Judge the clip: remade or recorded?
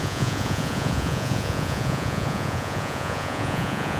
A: remade